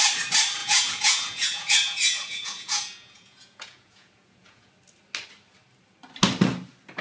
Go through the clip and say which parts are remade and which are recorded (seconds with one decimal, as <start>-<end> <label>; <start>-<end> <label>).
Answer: 0.0-0.6 recorded; 0.6-4.7 remade; 4.7-7.0 recorded